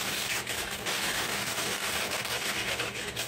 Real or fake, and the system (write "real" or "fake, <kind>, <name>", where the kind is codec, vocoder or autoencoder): fake, codec, DAC